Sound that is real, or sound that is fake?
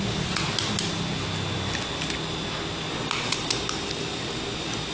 real